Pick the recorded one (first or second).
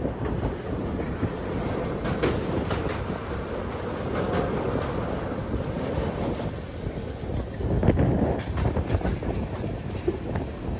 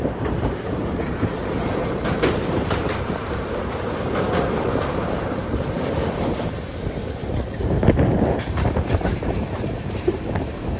first